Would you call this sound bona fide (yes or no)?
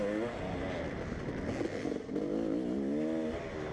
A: yes